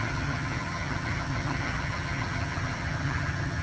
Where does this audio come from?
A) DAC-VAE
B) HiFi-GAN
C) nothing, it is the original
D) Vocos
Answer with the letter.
B